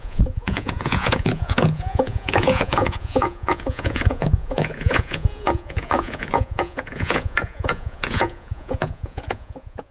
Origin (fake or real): fake